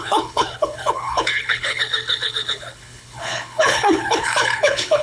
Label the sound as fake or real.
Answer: fake